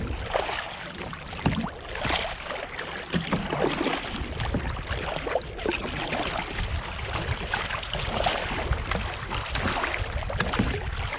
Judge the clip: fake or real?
real